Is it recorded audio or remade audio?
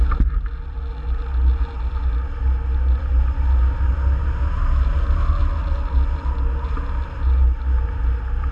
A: recorded